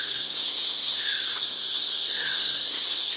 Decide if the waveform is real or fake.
fake